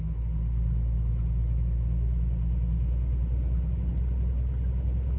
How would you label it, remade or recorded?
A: recorded